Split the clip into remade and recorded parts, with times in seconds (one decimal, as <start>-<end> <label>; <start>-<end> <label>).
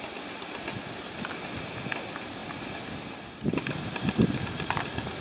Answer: 0.0-5.2 recorded